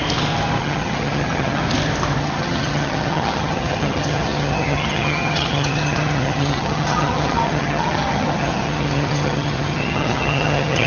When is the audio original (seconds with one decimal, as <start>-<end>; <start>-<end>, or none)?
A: 0.0-0.6; 1.6-2.2